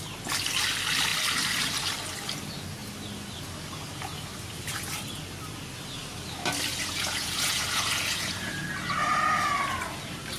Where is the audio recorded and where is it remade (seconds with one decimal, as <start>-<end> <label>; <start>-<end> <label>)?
0.0-6.7 recorded; 6.7-8.5 remade; 8.5-10.4 recorded